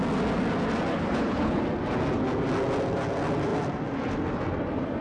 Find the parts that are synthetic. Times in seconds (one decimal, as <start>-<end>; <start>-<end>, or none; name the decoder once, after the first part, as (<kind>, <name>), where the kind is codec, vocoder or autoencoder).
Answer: 0.9-1.6 (codec, HILCodec)